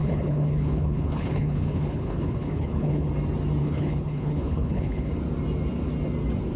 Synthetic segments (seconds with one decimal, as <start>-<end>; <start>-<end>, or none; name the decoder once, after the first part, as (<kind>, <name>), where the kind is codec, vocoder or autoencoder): 0.0-3.1 (codec, HILCodec); 3.6-5.1